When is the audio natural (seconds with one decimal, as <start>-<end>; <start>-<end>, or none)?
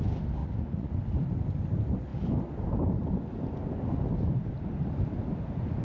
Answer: 0.0-0.4; 0.9-5.8